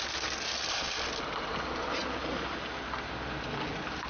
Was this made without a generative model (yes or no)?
yes